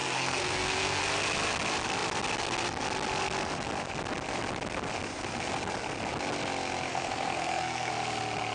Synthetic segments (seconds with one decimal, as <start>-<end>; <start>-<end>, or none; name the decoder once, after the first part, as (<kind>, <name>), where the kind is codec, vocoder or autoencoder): 0.0-1.0 (codec, SNAC); 6.9-7.9